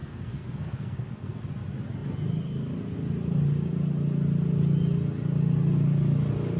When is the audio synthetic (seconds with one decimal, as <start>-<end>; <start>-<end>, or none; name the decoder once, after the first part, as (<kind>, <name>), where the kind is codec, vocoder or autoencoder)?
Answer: 0.0-1.4 (codec, SNAC)